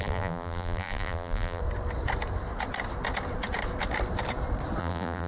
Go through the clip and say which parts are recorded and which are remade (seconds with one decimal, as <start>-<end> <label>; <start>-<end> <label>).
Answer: 0.0-1.6 remade; 1.6-4.8 recorded; 4.8-5.3 remade